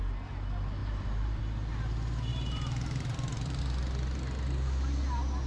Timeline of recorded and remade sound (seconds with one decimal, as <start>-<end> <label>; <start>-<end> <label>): 0.0-0.8 recorded; 0.8-1.4 remade; 1.4-2.3 recorded; 2.3-3.6 remade; 3.6-5.5 recorded